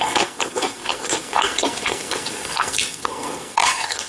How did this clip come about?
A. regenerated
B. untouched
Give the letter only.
A